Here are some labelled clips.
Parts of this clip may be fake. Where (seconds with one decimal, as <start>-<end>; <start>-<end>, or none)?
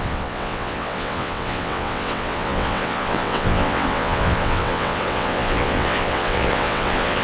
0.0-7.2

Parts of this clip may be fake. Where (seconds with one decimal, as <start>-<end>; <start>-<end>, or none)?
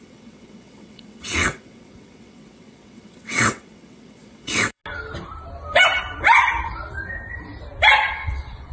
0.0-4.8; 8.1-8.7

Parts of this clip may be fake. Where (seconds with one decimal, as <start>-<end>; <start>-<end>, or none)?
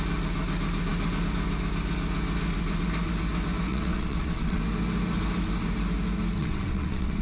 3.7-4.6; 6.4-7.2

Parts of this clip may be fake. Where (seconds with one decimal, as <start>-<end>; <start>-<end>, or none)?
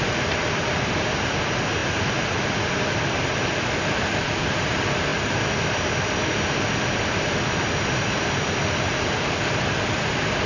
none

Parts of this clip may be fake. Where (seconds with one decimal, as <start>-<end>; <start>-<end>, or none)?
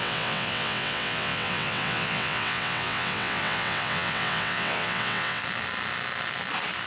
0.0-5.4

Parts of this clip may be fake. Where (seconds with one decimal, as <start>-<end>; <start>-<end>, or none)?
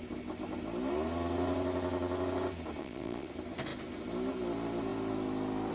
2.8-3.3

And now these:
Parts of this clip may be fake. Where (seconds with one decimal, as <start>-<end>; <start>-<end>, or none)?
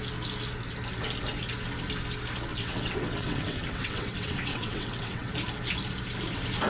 2.5-5.3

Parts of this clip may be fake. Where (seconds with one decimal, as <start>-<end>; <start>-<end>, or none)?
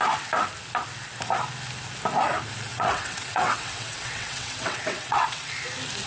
2.7-5.5